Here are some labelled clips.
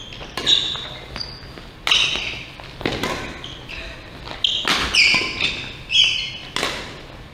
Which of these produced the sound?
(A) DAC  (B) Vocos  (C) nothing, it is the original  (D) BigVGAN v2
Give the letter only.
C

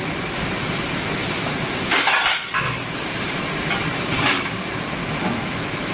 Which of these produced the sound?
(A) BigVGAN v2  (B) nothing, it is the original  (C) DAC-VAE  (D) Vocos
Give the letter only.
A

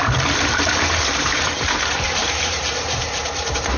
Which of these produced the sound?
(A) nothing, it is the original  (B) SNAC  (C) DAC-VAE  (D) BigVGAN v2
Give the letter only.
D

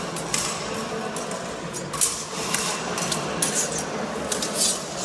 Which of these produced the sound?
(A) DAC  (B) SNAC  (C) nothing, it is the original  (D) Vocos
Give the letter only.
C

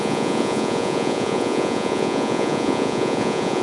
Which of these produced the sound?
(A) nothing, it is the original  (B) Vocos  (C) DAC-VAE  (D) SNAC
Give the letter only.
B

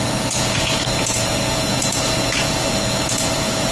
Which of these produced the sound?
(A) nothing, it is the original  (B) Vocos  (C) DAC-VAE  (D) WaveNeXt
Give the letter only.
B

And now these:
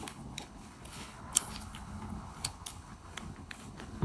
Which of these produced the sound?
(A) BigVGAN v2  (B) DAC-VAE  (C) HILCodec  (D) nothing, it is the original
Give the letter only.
C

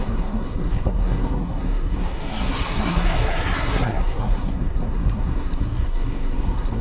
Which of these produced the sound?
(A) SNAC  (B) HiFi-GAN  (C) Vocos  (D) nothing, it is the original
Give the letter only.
A